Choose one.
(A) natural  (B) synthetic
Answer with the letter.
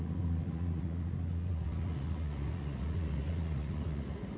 B